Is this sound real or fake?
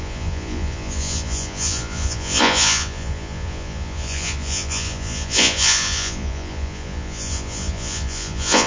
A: fake